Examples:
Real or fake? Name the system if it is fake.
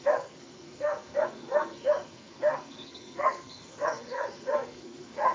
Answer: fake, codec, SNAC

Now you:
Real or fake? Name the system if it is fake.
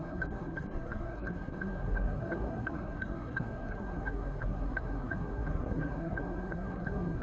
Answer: fake, codec, SNAC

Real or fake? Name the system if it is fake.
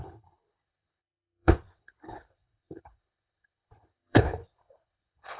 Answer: fake, codec, HILCodec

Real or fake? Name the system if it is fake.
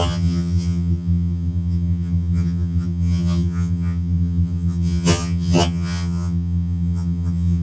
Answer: fake, vocoder, HiFi-GAN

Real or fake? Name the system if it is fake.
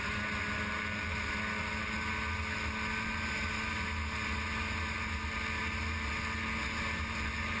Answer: real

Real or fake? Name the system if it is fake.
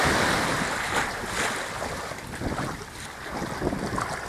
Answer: real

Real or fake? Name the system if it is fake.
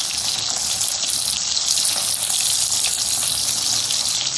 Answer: real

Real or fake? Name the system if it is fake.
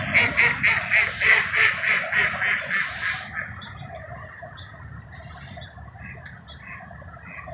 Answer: real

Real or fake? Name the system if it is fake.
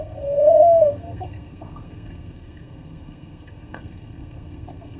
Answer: fake, codec, SNAC